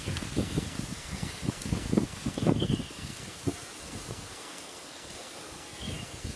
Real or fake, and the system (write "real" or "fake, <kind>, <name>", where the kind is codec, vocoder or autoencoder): fake, codec, SNAC